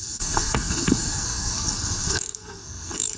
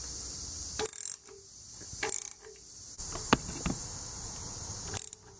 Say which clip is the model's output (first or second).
first